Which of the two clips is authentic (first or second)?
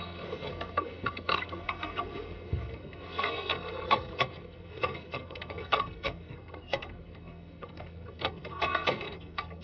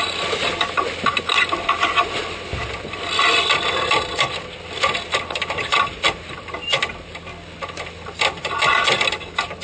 second